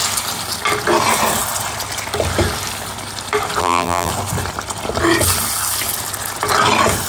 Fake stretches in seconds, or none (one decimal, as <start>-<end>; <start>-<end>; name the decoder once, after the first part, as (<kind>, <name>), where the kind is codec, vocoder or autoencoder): 3.6-4.1 (vocoder, BigVGAN v2)